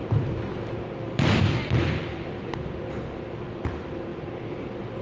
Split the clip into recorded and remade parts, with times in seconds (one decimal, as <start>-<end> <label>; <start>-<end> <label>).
0.0-5.0 recorded